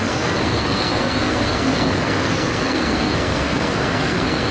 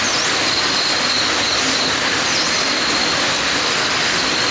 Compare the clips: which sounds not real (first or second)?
first